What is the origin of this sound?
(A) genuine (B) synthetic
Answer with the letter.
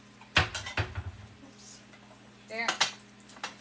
A